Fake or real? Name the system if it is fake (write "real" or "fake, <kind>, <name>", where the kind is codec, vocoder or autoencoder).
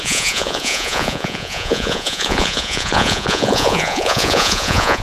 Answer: fake, vocoder, Vocos